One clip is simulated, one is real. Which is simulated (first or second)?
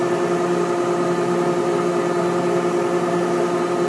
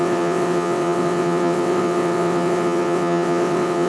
second